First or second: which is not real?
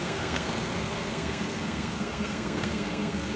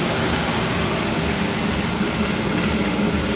first